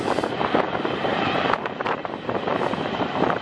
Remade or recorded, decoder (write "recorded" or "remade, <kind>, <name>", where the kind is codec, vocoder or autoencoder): remade, vocoder, BigVGAN v2